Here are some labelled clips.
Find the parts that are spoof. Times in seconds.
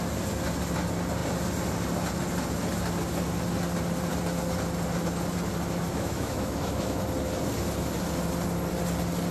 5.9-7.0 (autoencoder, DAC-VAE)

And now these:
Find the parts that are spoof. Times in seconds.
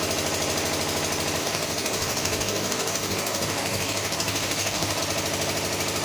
1.4-5.0 (codec, DAC)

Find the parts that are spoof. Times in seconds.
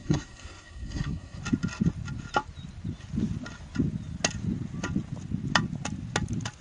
0.0-1.4 (codec, SNAC)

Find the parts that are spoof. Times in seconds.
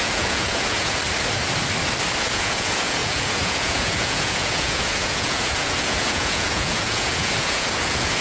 0.0-1.0 (vocoder, Vocos); 2.2-8.2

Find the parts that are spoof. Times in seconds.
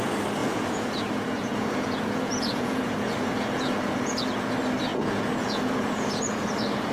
0.4-4.5 (vocoder, Vocos); 4.9-6.9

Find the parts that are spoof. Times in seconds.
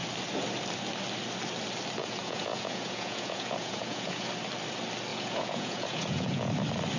2.0-4.3 (vocoder, Vocos); 5.1-6.5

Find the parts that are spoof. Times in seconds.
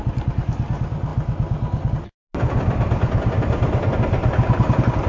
none